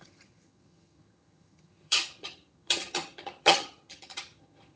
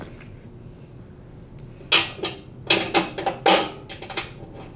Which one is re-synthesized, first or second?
first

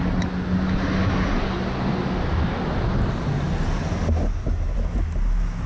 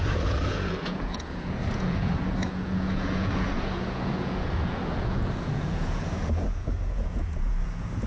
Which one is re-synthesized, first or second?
second